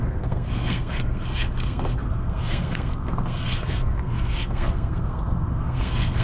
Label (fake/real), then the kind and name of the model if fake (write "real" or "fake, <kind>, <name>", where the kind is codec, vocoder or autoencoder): fake, codec, SNAC